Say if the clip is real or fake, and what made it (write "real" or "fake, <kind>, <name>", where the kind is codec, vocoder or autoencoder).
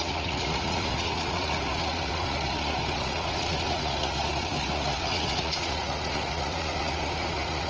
fake, vocoder, Vocos